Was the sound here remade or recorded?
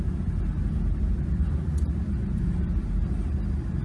recorded